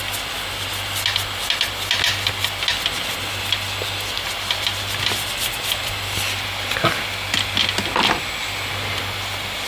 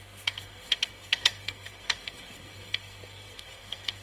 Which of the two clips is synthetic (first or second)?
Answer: second